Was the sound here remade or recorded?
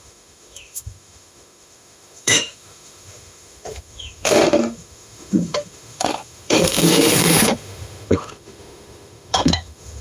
remade